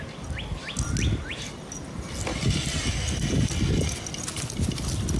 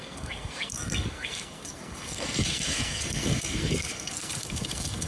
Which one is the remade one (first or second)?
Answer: second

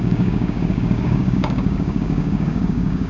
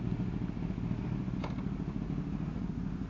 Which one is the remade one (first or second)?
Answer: first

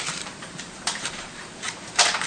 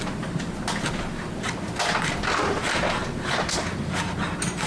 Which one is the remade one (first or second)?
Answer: first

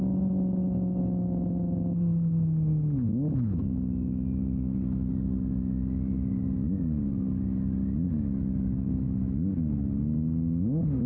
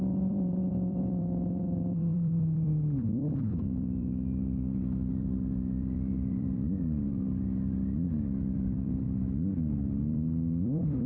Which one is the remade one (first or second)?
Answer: second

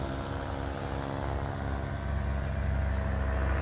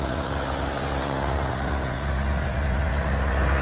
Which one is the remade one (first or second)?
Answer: second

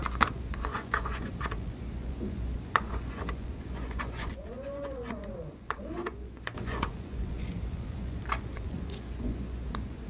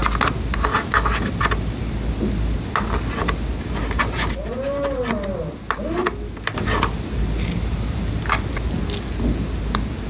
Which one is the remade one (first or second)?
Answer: first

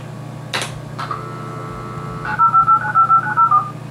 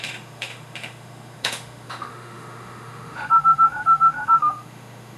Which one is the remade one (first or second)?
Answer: second